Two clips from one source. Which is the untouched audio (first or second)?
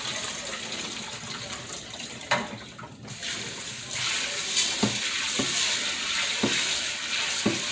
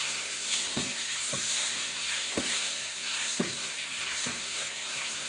first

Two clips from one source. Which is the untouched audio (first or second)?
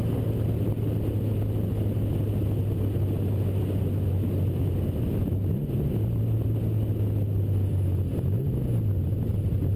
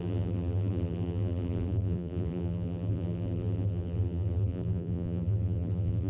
first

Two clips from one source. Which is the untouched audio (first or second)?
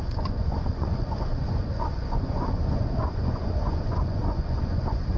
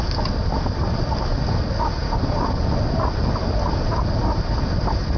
second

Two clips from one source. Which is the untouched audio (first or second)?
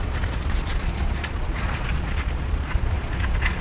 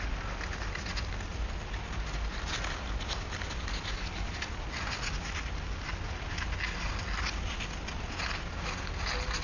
second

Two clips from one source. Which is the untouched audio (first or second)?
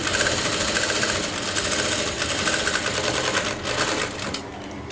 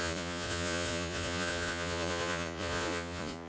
first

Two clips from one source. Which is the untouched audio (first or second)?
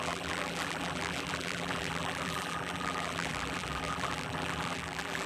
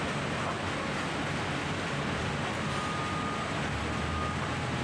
second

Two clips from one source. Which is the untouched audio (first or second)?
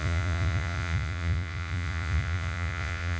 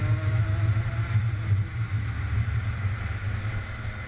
second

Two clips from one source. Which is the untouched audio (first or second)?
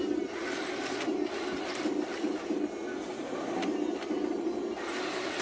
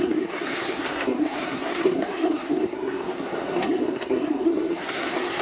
first